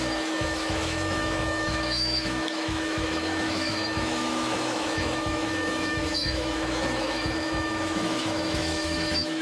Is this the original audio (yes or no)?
no